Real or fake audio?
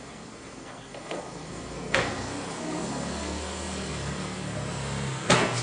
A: fake